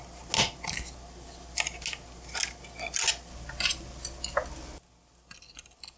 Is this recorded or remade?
recorded